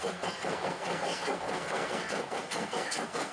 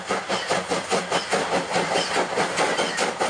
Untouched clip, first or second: second